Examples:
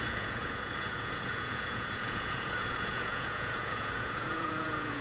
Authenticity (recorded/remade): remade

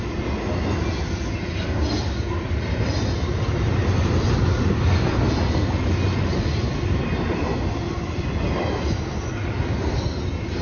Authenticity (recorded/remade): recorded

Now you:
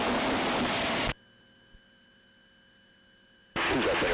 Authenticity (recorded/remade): recorded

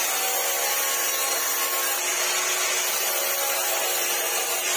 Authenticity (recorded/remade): recorded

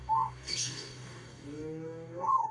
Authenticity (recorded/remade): remade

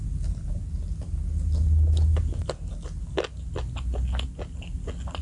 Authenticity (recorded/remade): recorded